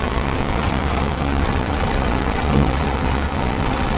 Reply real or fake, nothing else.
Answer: fake